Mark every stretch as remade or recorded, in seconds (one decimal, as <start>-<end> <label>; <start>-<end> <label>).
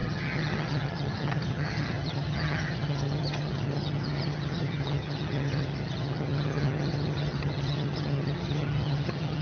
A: 0.0-9.4 remade